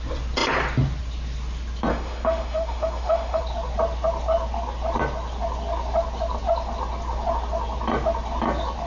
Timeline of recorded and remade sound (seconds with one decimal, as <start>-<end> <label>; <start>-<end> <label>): 0.0-1.9 recorded; 1.9-3.4 remade; 3.4-8.9 recorded